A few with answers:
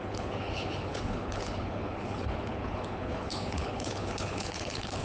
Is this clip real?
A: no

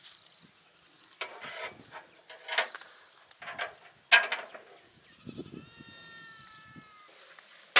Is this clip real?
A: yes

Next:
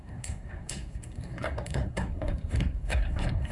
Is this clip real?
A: no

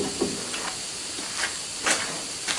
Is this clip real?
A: yes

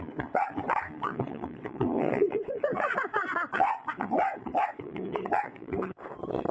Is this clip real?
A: no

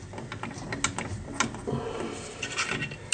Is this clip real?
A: yes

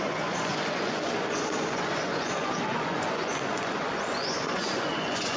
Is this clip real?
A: no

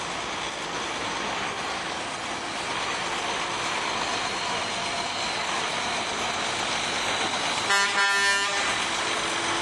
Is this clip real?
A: yes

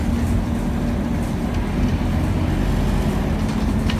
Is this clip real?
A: yes